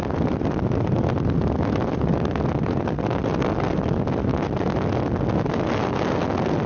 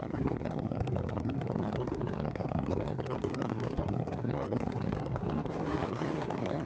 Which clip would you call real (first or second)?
first